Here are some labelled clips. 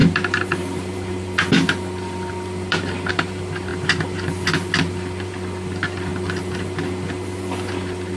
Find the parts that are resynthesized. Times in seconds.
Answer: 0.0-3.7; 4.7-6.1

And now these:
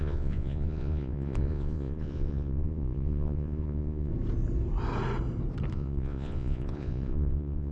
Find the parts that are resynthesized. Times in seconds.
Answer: 0.0-4.1; 5.7-7.7

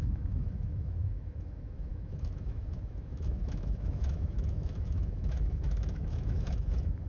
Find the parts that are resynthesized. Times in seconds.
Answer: 0.0-7.1

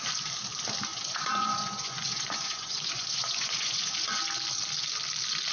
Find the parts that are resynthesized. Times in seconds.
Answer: 0.9-4.2

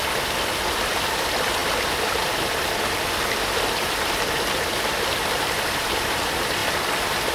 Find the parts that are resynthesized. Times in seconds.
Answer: 0.0-6.6

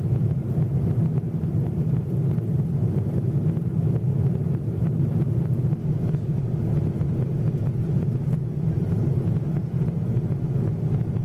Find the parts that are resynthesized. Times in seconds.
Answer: 5.8-6.4